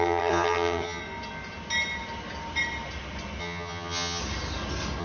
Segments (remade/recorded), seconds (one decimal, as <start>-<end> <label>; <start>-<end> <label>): 0.0-1.0 remade; 1.0-3.4 recorded; 3.4-4.2 remade; 4.2-5.0 recorded